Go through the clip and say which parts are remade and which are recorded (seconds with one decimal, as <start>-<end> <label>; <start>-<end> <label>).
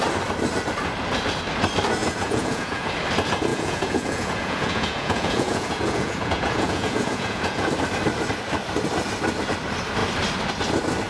0.0-2.0 recorded; 2.0-2.9 remade; 2.9-3.5 recorded; 3.5-7.7 remade; 7.7-11.1 recorded